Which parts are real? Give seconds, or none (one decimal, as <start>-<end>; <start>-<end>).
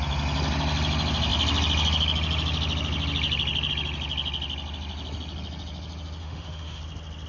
0.0-6.2; 6.8-7.3